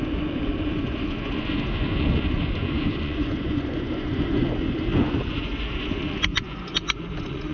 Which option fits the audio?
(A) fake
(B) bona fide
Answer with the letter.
A